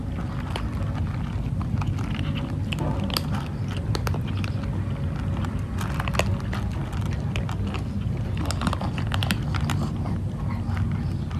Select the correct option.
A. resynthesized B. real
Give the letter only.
B